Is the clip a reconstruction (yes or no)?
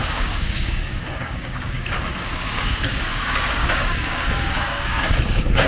yes